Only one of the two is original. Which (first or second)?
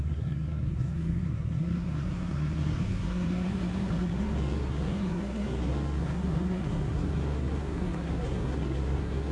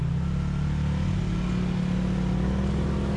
second